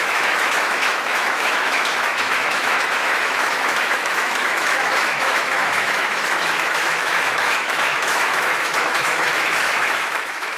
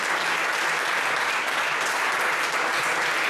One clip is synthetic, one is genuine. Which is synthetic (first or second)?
first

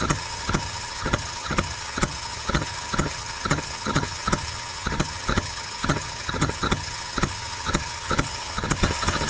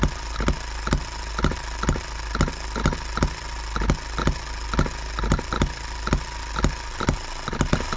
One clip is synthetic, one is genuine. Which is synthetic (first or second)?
first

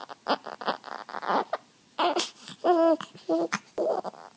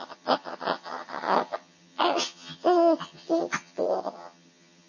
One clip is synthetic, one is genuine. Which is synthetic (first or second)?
second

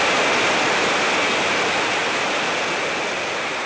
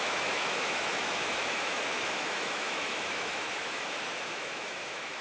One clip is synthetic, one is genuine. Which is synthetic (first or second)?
second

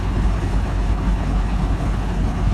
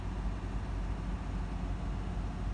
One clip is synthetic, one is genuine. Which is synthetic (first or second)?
first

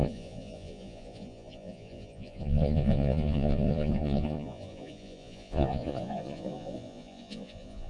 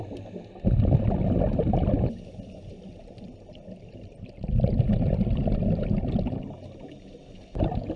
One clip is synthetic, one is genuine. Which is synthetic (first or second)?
first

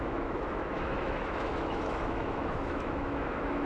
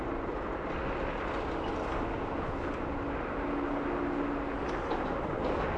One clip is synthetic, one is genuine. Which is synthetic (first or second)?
first